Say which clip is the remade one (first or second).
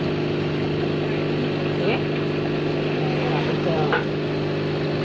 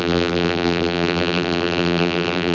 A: second